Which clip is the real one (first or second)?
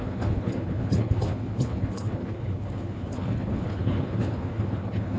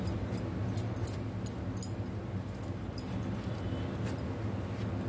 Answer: second